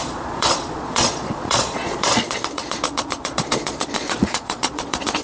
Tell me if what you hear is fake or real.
fake